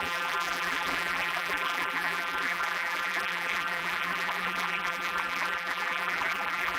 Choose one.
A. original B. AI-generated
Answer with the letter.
B